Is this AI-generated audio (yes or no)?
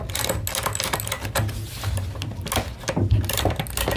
no